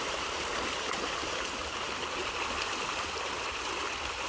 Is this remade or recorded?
recorded